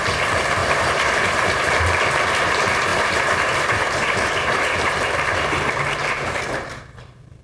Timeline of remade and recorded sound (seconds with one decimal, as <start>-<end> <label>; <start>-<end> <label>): 0.0-0.6 recorded; 0.6-1.7 remade; 1.7-2.9 recorded; 2.9-7.4 remade